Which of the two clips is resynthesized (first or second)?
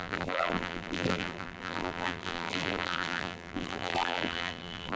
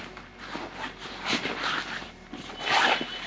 first